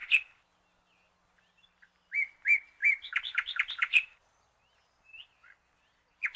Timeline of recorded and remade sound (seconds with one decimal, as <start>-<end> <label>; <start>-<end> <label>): 0.0-2.8 recorded; 2.8-4.4 remade; 4.4-6.4 recorded